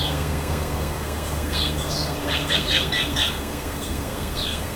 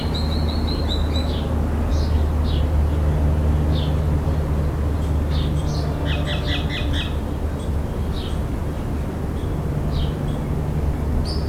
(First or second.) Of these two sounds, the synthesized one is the first